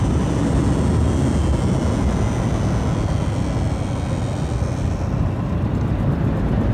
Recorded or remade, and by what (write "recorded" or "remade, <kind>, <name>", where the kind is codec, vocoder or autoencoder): recorded